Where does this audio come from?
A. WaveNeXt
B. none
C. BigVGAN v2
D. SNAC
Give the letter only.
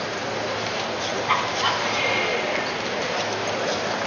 B